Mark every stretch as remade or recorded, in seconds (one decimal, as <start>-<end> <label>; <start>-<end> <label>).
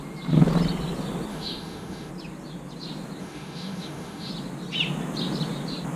0.0-1.3 recorded; 1.3-2.1 remade; 2.1-3.2 recorded; 3.2-4.3 remade; 4.3-6.0 recorded